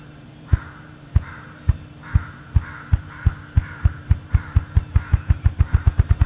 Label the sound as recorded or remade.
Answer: remade